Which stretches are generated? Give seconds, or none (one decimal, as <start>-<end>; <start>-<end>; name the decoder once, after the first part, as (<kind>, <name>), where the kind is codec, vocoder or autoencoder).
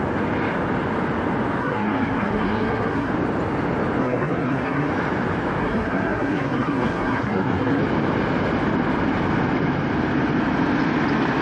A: 1.6-3.1 (codec, SNAC); 4.0-4.9; 5.6-7.8